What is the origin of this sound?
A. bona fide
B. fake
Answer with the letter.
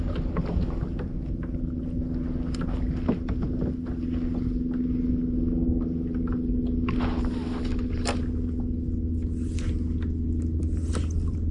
A